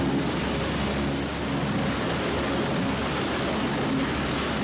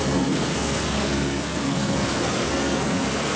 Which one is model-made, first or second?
second